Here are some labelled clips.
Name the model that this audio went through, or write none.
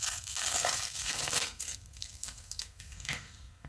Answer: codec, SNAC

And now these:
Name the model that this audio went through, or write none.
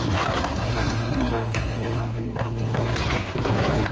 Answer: codec, SNAC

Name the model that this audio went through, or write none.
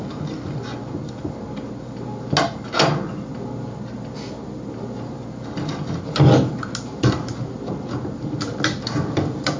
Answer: none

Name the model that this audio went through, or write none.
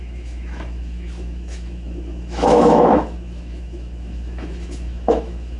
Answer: autoencoder, DAC-VAE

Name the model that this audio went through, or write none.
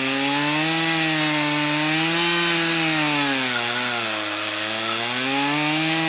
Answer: none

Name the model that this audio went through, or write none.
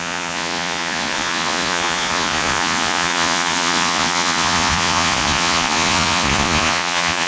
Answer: vocoder, Vocos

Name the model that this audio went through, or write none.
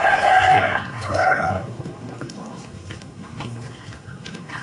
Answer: codec, SNAC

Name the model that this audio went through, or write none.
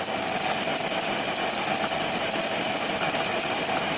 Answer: none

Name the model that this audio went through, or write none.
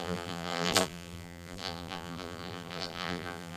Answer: vocoder, BigVGAN v2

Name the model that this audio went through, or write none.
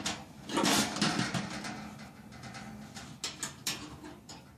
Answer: none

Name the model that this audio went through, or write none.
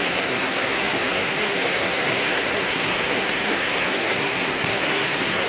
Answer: codec, SNAC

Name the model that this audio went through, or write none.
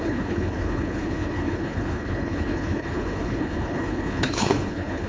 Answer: codec, HILCodec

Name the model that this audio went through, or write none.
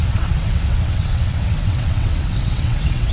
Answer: vocoder, WaveNeXt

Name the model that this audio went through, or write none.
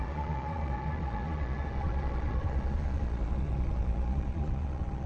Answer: vocoder, Vocos